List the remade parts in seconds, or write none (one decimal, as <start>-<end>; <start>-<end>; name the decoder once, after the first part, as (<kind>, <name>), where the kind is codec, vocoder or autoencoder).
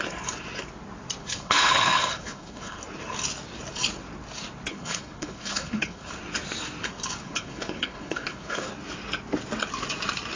1.2-2.8 (codec, HILCodec); 4.7-6.1; 7.2-8.7